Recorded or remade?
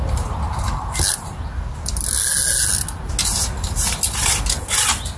recorded